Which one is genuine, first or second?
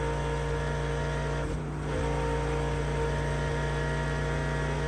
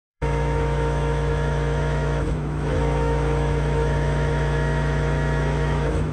first